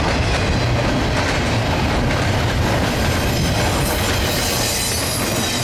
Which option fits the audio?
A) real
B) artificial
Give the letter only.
A